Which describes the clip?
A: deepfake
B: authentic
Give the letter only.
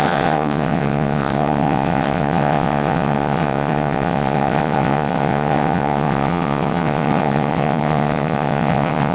A